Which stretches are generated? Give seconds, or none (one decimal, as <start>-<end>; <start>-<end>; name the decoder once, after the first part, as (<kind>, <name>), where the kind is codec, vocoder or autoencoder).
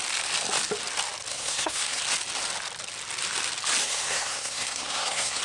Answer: 1.3-2.0 (codec, SNAC); 3.8-5.4